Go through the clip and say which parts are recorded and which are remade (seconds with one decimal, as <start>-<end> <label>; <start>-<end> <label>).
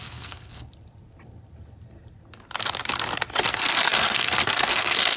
0.0-0.7 remade; 0.7-3.5 recorded; 3.5-5.2 remade